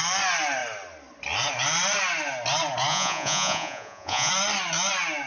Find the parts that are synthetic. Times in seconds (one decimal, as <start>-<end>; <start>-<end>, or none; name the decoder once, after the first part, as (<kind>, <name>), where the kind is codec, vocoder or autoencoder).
2.9-4.3 (vocoder, Vocos)